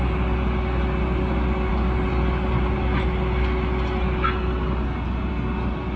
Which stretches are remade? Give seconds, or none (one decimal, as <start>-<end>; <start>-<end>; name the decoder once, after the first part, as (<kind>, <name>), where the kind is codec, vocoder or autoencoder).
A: none

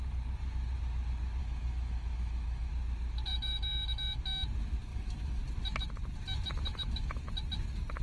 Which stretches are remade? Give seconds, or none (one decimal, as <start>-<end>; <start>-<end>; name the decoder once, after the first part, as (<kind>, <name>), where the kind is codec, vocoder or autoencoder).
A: 1.4-2.7 (autoencoder, DAC-VAE); 3.3-4.2; 4.9-5.4; 6.7-7.3

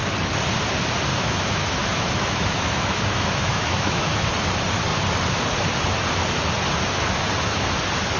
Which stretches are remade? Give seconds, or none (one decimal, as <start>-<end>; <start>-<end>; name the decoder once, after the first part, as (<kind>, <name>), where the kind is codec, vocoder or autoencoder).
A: 1.1-4.3 (autoencoder, DAC-VAE)

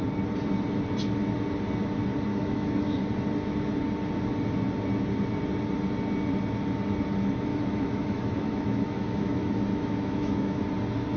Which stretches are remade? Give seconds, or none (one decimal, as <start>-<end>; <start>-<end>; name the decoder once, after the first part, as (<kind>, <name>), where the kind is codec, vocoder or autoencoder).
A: 2.3-3.0 (autoencoder, DAC-VAE); 7.5-10.6

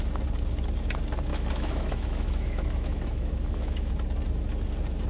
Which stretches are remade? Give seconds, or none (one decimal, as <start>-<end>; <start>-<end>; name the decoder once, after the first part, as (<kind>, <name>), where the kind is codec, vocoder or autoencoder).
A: 1.3-3.9 (autoencoder, DAC-VAE)